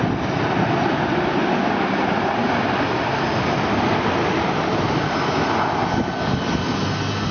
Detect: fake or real real